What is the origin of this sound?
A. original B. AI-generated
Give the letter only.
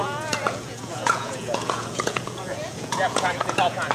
B